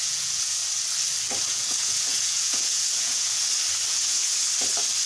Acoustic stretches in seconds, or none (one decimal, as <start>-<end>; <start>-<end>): 0.6-1.5; 3.4-3.9; 4.4-5.1